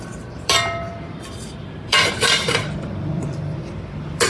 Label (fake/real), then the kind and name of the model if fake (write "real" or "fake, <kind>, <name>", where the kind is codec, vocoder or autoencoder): fake, vocoder, BigVGAN v2